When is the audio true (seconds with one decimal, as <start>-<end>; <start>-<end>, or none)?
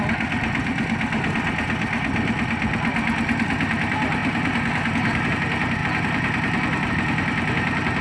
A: 0.0-8.0